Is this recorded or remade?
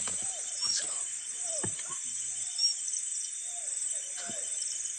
remade